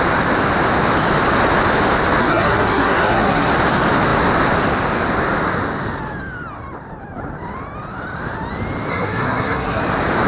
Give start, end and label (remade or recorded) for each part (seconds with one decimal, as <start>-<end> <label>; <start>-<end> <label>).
0.0-2.2 recorded; 2.2-3.5 remade; 3.5-8.9 recorded; 8.9-9.8 remade; 9.8-10.3 recorded